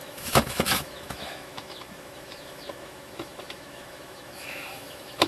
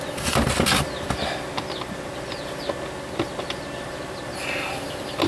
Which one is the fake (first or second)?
first